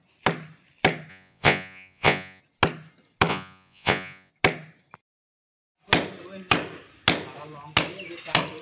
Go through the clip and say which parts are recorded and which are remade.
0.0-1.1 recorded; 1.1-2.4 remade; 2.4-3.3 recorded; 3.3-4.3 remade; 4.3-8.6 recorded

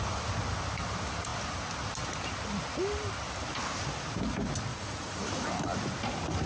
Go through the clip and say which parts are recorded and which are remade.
0.0-4.7 recorded; 4.7-5.2 remade; 5.2-6.5 recorded